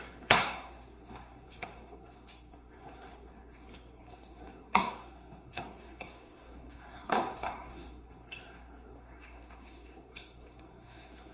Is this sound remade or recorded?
remade